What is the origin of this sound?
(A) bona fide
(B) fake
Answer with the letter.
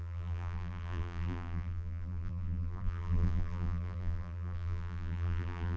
B